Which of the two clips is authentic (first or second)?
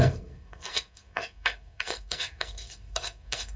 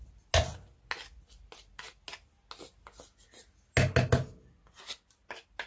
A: second